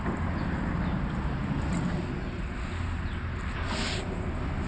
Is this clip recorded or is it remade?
recorded